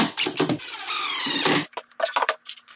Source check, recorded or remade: remade